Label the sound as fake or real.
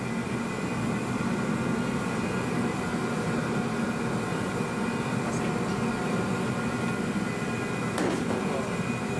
real